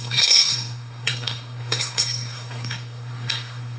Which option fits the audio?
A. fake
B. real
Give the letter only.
A